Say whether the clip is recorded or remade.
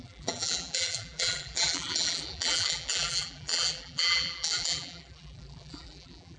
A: remade